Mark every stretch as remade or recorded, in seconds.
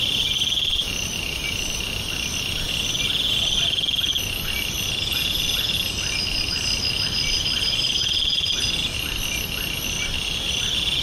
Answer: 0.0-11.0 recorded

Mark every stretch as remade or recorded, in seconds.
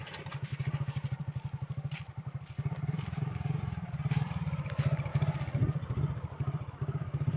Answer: 0.0-7.4 remade